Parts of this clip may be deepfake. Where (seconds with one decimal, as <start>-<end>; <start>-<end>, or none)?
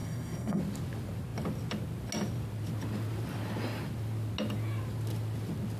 0.0-0.6